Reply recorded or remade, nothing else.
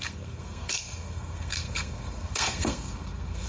remade